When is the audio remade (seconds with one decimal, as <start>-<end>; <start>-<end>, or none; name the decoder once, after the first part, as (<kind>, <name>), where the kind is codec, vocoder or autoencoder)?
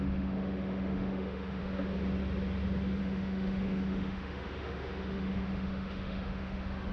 0.0-1.6 (autoencoder, DAC-VAE); 3.0-6.9